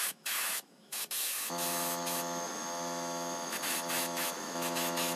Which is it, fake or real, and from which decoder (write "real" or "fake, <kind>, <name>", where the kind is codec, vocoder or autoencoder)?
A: fake, autoencoder, DAC-VAE